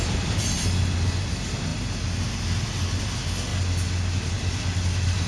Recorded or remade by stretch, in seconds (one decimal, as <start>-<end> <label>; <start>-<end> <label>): 0.0-5.3 recorded